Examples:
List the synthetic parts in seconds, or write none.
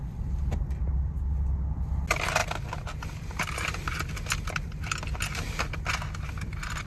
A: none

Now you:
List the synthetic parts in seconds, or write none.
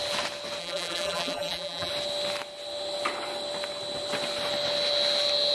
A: 0.6-1.9 (vocoder, BigVGAN v2)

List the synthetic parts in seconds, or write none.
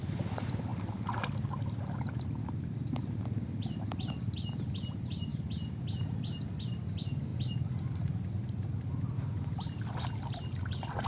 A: 0.0-5.3 (vocoder, BigVGAN v2); 6.6-11.1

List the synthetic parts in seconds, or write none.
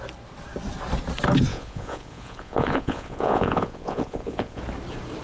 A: 1.5-4.6 (vocoder, Vocos)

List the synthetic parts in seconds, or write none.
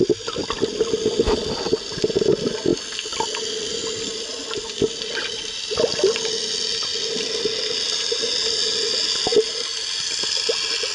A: none